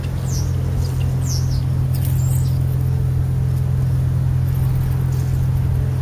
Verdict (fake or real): real